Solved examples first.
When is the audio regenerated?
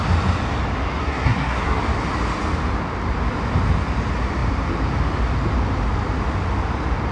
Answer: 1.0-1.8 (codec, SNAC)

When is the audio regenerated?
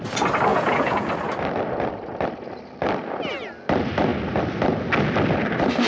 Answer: 0.5-1.1 (vocoder, Vocos)